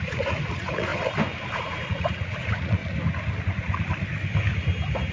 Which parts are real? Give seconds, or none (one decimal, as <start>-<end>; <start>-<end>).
0.9-1.6; 2.8-3.4; 3.9-5.1